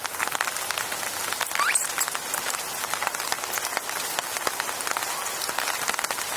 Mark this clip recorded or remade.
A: recorded